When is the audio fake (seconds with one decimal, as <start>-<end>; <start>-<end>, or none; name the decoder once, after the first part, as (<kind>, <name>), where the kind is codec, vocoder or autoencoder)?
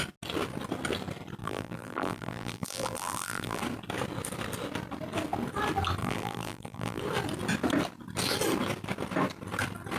1.4-3.6 (vocoder, BigVGAN v2); 6.0-7.0